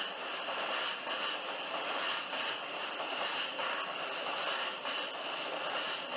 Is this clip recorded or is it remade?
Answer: recorded